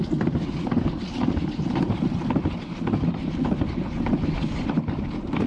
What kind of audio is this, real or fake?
real